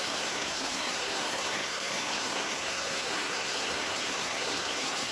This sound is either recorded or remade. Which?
remade